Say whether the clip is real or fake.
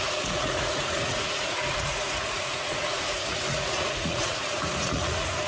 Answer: fake